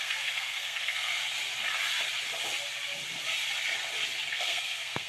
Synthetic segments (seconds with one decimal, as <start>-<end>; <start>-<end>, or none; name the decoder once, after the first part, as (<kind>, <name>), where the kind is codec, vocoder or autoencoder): 0.0-1.2 (codec, SNAC); 4.3-5.1